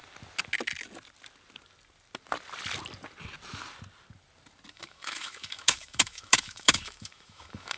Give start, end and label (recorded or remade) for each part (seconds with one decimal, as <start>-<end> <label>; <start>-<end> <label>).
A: 0.0-4.7 recorded; 4.7-7.8 remade